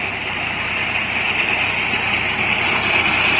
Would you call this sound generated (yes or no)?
no